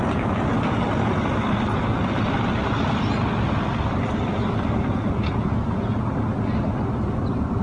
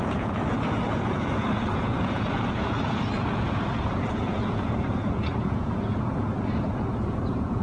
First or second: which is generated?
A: second